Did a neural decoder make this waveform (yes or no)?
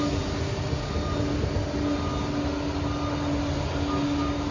no